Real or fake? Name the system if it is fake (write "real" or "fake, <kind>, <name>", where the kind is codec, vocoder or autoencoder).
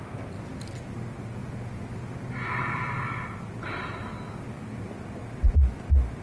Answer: real